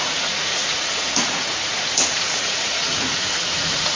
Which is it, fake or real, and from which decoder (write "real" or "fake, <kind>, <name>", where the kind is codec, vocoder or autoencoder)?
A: fake, vocoder, Vocos